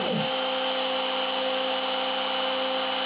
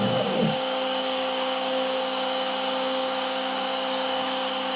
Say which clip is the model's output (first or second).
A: second